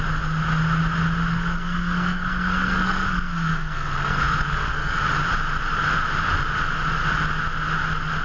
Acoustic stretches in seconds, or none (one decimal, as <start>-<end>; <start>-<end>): 0.0-1.3; 5.0-8.2